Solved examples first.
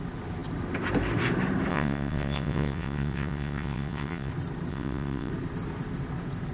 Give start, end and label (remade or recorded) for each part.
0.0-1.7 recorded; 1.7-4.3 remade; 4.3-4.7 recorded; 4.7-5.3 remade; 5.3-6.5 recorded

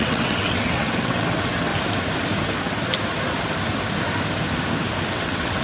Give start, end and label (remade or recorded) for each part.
0.0-1.7 remade; 1.7-5.1 recorded; 5.1-5.6 remade